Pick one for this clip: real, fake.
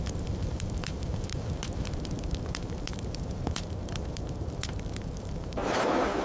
fake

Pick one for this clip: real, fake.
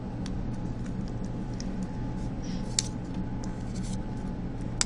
real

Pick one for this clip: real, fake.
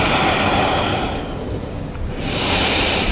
real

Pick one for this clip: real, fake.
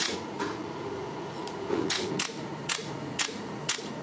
fake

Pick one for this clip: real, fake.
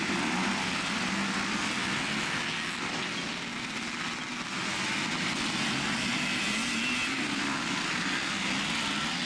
real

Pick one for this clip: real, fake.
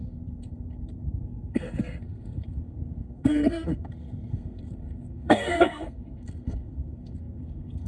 fake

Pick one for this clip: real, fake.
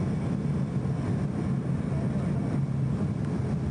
real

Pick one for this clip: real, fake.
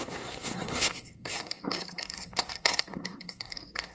fake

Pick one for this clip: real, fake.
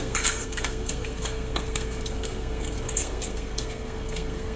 fake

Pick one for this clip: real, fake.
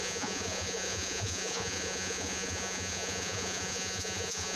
fake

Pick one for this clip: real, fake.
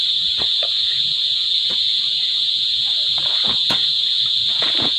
fake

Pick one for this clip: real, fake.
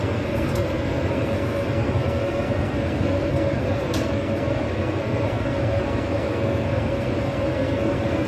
fake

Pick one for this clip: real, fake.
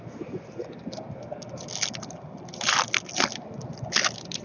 real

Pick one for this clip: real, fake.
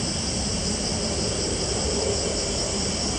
real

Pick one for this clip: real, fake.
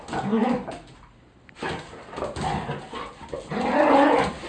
real